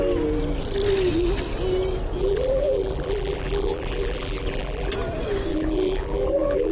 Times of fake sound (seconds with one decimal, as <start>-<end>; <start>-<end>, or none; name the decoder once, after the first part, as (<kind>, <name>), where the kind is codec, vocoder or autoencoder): 2.2-4.9 (vocoder, BigVGAN v2); 5.5-6.7